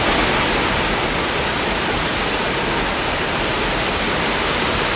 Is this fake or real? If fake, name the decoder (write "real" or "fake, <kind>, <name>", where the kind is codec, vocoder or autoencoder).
real